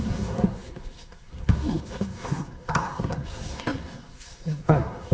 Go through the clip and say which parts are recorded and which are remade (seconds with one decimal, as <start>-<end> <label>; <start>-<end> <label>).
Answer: 0.0-5.1 remade